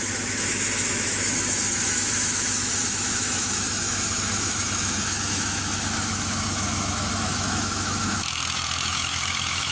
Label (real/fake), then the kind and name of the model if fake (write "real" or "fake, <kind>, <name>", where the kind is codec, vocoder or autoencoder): fake, autoencoder, DAC-VAE